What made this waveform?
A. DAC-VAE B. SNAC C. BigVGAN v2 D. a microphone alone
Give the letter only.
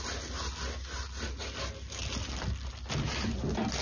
D